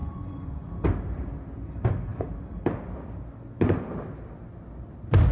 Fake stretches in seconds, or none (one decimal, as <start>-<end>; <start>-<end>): 0.0-0.7